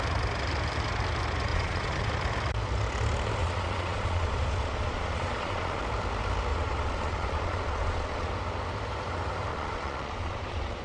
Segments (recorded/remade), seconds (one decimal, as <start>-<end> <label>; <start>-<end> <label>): 0.0-1.5 recorded; 1.5-2.1 remade; 2.1-3.4 recorded; 3.4-5.8 remade; 5.8-6.5 recorded; 6.5-8.3 remade; 8.3-9.5 recorded; 9.5-10.8 remade

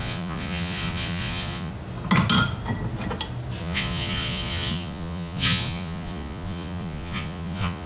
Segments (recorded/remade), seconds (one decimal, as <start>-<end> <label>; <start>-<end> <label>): 0.0-1.7 remade; 1.7-3.6 recorded; 3.6-7.9 remade

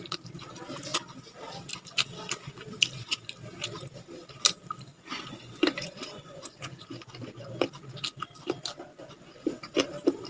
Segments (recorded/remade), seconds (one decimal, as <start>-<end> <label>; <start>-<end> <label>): 0.0-4.9 recorded; 4.9-7.6 remade; 7.6-8.9 recorded; 8.9-9.7 remade; 9.7-10.3 recorded

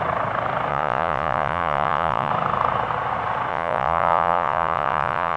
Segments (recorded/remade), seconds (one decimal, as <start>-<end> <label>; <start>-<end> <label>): 0.0-0.7 recorded; 0.7-2.3 remade; 2.3-3.5 recorded; 3.5-5.4 remade

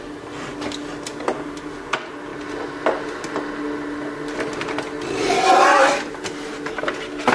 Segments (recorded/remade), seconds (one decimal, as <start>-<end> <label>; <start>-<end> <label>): 0.0-7.3 recorded

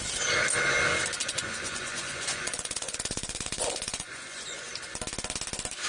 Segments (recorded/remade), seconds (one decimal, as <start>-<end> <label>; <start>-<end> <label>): 0.0-1.2 recorded; 1.2-4.7 remade; 4.7-5.9 recorded

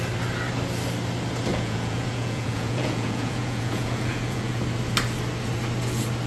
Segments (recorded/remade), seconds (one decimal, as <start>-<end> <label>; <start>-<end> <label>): 0.0-1.5 recorded; 1.5-4.6 remade; 4.6-6.3 recorded

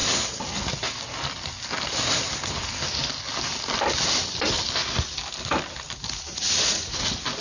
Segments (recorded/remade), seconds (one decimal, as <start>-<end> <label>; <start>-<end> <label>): 0.0-6.3 recorded; 6.3-7.0 remade; 7.0-7.4 recorded